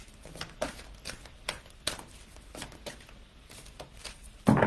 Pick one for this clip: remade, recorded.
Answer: recorded